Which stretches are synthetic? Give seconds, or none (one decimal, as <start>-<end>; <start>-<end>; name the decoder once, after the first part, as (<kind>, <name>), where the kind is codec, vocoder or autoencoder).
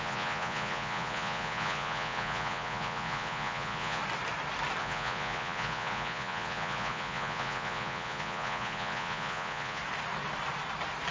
0.0-4.0 (vocoder, Vocos); 4.8-9.8